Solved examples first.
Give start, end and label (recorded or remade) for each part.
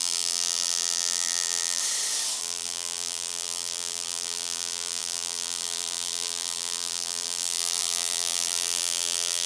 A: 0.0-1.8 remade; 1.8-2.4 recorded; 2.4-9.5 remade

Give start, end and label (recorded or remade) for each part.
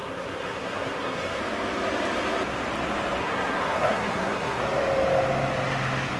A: 0.0-1.4 remade; 1.4-3.2 recorded; 3.2-4.6 remade; 4.6-6.2 recorded